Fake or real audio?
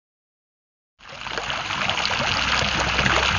real